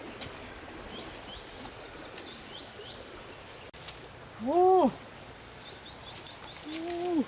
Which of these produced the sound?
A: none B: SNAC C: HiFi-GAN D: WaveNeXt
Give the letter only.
A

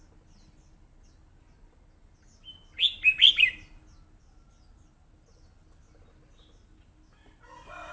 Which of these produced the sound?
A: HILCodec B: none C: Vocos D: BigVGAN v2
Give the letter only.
B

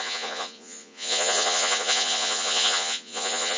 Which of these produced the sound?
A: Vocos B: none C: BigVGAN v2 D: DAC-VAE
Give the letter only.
A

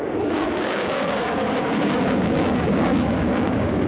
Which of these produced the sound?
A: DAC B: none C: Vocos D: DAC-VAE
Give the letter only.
A